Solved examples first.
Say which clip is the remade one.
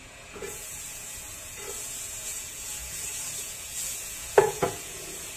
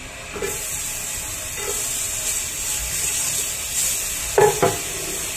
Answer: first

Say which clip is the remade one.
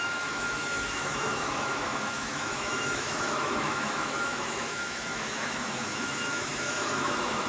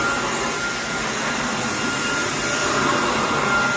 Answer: first